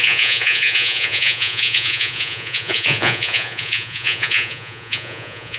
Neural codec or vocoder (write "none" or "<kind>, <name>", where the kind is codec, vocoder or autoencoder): vocoder, Vocos